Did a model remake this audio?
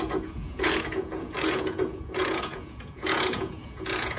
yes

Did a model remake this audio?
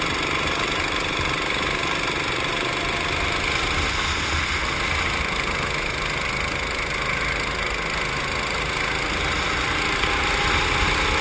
no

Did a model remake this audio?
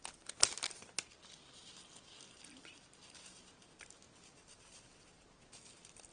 no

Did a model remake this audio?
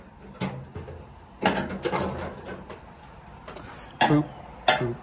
no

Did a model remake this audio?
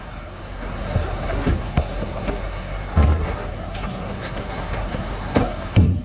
yes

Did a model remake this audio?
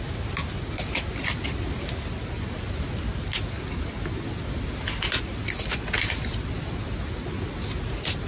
no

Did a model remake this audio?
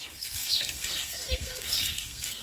yes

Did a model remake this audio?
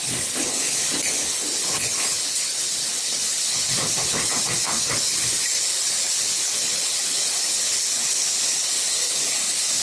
yes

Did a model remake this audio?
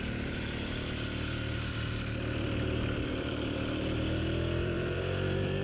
yes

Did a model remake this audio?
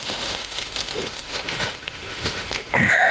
yes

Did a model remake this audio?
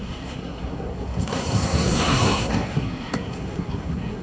yes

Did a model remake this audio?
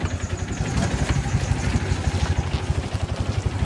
no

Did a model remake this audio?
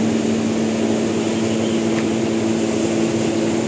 no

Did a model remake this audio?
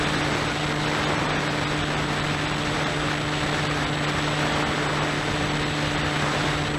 no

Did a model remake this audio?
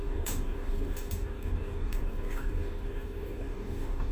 yes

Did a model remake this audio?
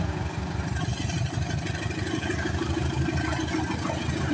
no